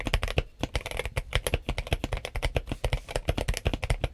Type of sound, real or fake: real